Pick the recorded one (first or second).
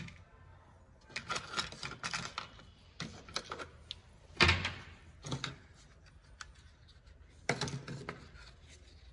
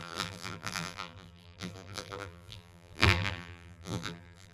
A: first